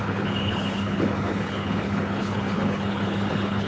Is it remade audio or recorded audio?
remade